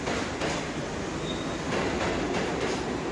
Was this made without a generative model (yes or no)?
yes